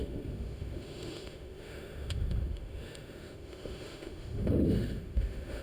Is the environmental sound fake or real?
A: fake